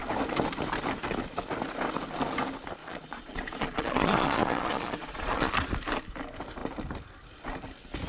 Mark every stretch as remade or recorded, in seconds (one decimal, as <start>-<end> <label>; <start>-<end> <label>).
0.0-2.8 recorded; 2.8-5.5 remade; 5.5-8.1 recorded